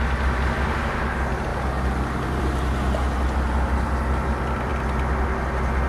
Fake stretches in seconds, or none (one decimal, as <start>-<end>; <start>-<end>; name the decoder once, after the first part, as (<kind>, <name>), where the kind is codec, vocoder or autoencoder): none